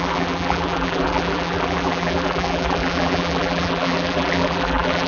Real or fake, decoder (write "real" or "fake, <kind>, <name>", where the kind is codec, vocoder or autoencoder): fake, vocoder, BigVGAN v2